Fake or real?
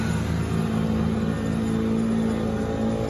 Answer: real